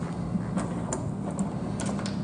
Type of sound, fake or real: real